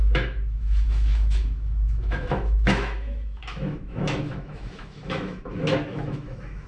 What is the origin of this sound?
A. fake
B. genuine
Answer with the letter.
A